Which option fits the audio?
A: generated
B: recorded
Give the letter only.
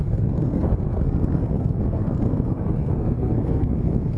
A